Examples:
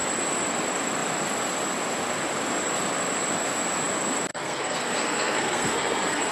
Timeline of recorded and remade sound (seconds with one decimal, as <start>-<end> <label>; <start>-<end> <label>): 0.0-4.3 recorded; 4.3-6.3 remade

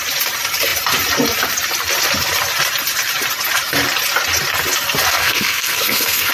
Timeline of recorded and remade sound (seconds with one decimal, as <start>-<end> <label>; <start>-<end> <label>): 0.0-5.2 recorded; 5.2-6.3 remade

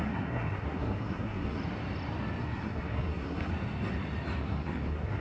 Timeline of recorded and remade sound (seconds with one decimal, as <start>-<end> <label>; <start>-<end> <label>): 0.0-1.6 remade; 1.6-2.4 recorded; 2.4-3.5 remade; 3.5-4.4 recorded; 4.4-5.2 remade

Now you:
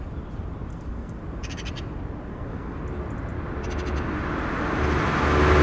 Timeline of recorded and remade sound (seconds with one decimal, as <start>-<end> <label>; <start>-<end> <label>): 0.0-0.7 recorded; 0.7-1.2 remade; 1.2-2.3 recorded; 2.3-2.8 remade; 2.8-5.6 recorded

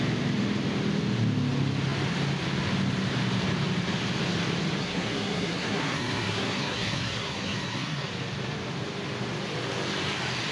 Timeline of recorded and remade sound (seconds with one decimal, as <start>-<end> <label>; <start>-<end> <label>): 0.0-4.8 recorded; 4.8-8.1 remade; 8.1-10.5 recorded

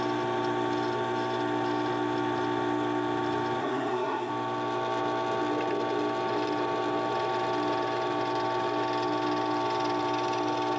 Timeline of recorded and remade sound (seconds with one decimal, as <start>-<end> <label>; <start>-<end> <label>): 0.0-3.6 recorded; 3.6-4.3 remade; 4.3-10.8 recorded

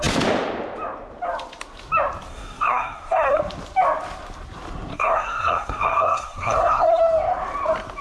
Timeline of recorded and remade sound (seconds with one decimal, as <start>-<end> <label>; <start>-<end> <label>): 0.0-2.3 recorded; 2.3-3.4 remade; 3.4-4.9 recorded; 4.9-7.0 remade; 7.0-8.0 recorded